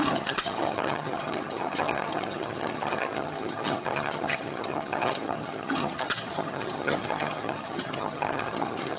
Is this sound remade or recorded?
remade